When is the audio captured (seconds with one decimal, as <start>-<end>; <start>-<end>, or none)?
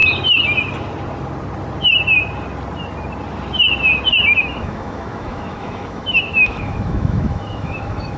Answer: 0.0-4.4